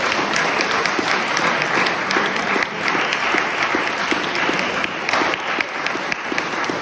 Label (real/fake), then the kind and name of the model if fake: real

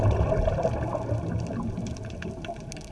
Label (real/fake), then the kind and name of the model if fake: real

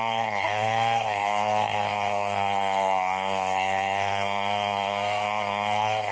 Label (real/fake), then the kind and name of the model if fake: fake, codec, SNAC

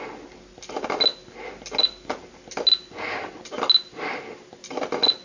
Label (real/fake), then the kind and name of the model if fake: real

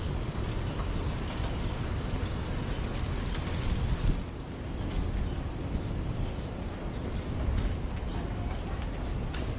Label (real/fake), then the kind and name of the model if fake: real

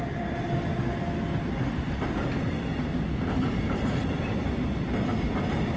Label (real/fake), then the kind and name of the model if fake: real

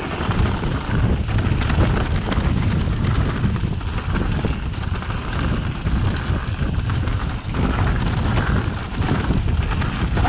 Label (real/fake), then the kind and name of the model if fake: real